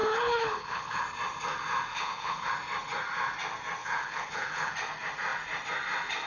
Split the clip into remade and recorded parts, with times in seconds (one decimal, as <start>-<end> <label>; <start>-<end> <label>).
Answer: 0.0-1.0 remade; 1.0-1.9 recorded; 1.9-2.5 remade; 2.5-3.8 recorded; 3.8-4.7 remade; 4.7-6.3 recorded